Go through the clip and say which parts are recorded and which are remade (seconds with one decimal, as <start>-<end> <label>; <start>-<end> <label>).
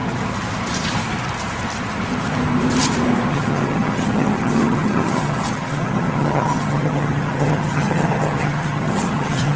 0.0-3.3 recorded; 3.3-9.6 remade